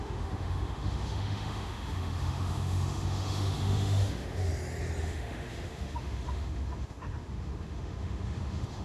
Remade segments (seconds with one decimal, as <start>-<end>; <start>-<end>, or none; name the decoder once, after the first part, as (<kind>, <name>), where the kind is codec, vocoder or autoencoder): 0.0-4.5 (autoencoder, DAC-VAE); 5.0-8.8